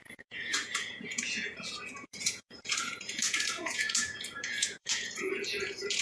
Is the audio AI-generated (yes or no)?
yes